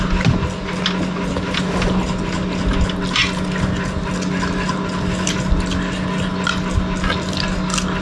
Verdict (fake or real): real